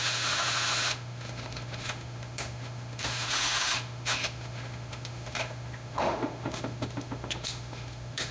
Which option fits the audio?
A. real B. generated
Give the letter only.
B